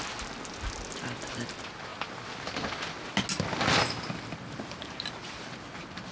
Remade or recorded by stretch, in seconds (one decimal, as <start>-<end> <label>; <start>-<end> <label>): 0.0-6.1 recorded